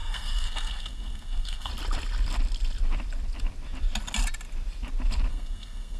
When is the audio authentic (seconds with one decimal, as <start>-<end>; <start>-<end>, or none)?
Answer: 1.7-5.3